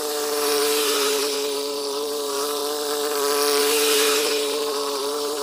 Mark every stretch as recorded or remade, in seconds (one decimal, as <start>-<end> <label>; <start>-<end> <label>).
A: 0.0-2.6 remade; 2.6-3.6 recorded; 3.6-5.4 remade

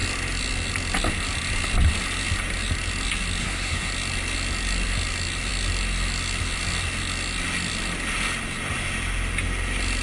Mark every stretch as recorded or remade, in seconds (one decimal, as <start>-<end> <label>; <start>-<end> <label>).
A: 0.0-3.4 recorded; 3.4-3.9 remade; 3.9-10.0 recorded

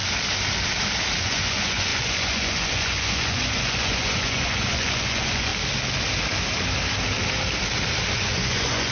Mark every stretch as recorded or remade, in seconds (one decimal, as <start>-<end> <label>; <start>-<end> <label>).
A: 0.0-1.2 recorded; 1.2-5.5 remade; 5.5-8.1 recorded; 8.1-8.9 remade

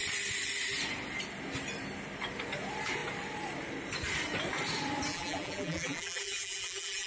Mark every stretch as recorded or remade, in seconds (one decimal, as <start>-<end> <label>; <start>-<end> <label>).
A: 0.0-5.1 recorded; 5.1-7.1 remade

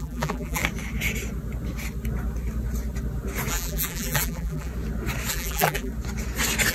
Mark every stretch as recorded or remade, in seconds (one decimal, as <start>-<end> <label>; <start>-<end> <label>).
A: 0.0-0.6 remade; 0.6-3.5 recorded; 3.5-4.7 remade; 4.7-5.3 recorded; 5.3-5.9 remade; 5.9-6.7 recorded